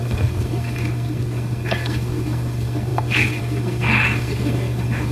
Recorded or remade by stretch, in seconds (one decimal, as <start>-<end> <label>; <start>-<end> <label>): 0.0-5.1 remade